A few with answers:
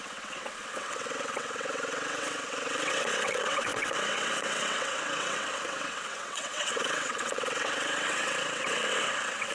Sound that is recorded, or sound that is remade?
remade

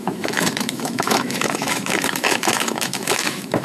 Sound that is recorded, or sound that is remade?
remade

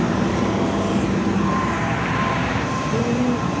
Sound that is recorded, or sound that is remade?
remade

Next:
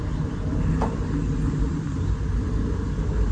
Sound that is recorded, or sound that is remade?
recorded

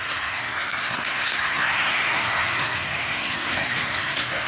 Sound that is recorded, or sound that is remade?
remade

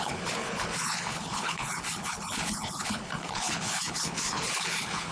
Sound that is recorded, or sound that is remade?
remade